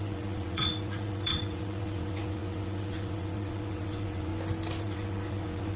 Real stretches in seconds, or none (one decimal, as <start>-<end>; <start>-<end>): 4.3-4.8